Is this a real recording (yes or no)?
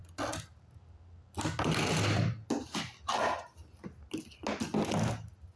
yes